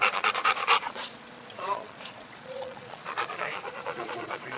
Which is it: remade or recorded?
remade